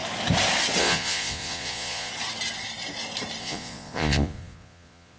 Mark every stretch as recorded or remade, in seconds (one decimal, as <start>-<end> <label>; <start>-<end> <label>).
0.0-0.8 recorded; 0.8-2.1 remade; 2.1-3.4 recorded; 3.4-5.2 remade